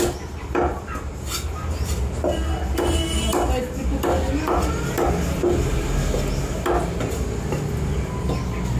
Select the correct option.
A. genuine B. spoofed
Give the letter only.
A